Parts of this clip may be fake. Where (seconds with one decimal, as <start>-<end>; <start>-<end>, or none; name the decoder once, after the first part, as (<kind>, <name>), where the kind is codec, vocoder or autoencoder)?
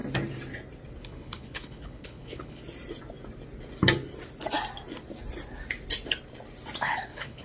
1.0-2.6 (codec, HILCodec); 6.8-7.4